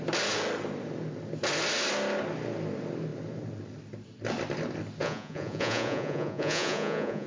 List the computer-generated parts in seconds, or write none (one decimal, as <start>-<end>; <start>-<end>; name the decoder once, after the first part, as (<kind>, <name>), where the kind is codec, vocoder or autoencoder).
5.0-7.3 (vocoder, Vocos)